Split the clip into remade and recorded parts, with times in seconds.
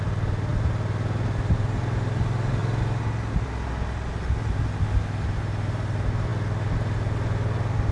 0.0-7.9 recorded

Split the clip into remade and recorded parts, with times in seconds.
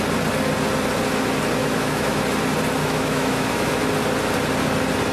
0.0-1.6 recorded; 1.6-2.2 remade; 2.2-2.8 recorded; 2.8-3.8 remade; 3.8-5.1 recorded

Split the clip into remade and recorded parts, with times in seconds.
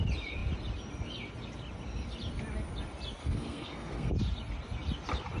0.0-3.2 recorded; 3.2-4.1 remade; 4.1-5.4 recorded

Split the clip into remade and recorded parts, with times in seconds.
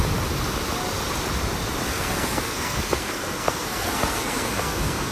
0.0-1.9 recorded; 1.9-5.1 remade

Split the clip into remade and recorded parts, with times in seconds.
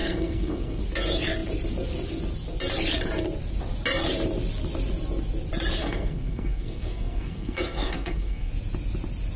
0.0-0.8 remade; 0.8-5.8 recorded; 5.8-8.5 remade; 8.5-9.4 recorded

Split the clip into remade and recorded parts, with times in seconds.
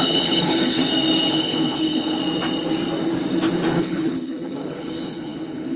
0.0-0.8 remade; 0.8-1.3 recorded; 1.3-2.2 remade; 2.2-3.8 recorded; 3.8-5.8 remade